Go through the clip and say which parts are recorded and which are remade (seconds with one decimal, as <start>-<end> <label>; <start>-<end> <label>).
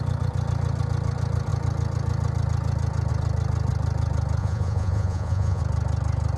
0.0-4.4 recorded; 4.4-5.6 remade; 5.6-6.4 recorded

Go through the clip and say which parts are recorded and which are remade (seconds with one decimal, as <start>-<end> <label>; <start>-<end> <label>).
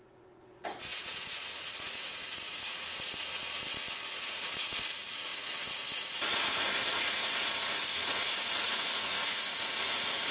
0.0-3.4 remade; 3.4-4.1 recorded; 4.1-10.3 remade